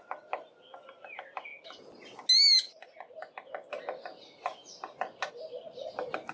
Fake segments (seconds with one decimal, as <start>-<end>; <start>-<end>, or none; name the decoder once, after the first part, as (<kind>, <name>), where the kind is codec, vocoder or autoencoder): none